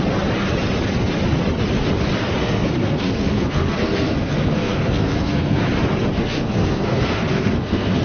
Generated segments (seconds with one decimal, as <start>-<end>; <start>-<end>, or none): 2.4-5.6; 6.2-8.0

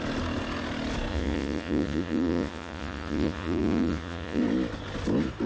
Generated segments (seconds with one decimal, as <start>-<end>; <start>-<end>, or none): 1.1-4.4

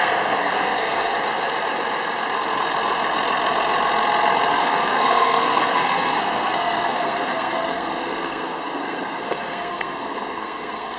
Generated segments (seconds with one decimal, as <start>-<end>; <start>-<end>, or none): 0.0-1.1; 4.5-11.0

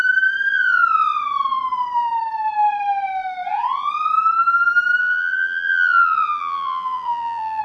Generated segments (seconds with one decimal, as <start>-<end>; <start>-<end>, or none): 5.0-7.6

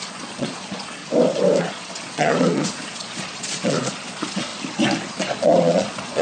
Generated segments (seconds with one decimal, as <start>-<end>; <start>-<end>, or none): 0.0-1.0; 1.6-4.5; 5.1-6.2

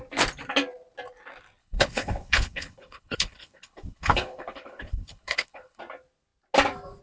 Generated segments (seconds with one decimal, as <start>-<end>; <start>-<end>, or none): 1.6-5.8